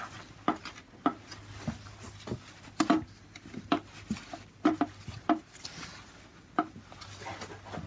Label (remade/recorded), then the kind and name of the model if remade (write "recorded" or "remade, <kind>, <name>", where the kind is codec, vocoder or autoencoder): recorded